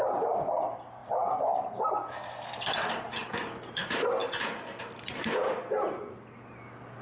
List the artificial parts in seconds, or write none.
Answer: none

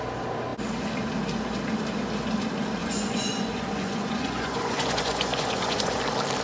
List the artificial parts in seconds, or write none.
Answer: 2.8-6.0

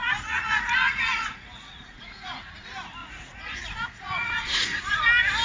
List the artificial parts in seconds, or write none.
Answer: 0.0-2.5; 3.0-5.0

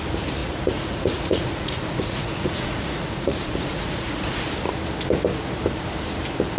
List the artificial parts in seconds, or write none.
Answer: 0.4-4.4